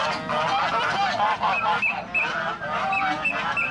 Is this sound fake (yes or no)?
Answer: no